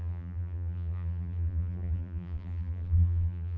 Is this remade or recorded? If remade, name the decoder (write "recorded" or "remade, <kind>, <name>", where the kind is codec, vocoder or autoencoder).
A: remade, vocoder, BigVGAN v2